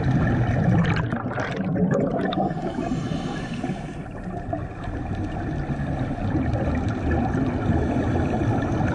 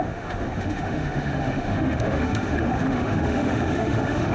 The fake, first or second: second